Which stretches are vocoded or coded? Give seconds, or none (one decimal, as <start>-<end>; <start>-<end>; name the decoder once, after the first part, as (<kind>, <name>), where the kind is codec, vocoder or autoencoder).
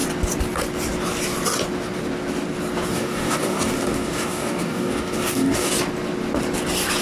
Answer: 2.9-5.7 (codec, DAC)